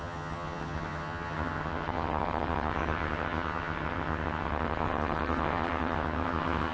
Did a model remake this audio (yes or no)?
yes